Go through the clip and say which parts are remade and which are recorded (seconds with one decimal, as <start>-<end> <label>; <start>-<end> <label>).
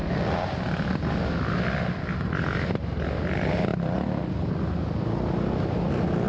0.0-6.3 recorded